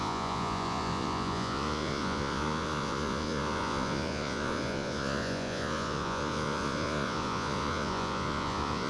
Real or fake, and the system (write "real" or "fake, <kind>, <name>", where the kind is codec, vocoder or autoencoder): fake, vocoder, Vocos